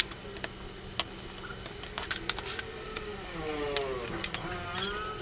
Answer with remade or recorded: recorded